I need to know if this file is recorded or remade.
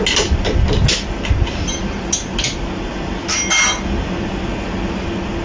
recorded